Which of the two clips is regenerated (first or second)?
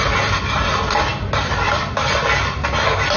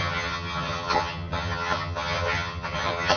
second